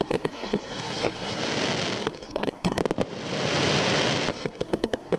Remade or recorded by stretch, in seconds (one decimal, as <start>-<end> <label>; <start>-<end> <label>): 0.0-1.4 remade; 1.4-2.0 recorded; 2.0-2.8 remade; 2.8-4.3 recorded; 4.3-5.2 remade